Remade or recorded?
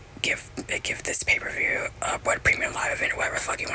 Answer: recorded